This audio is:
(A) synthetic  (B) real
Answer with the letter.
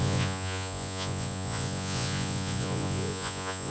A